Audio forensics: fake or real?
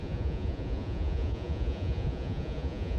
fake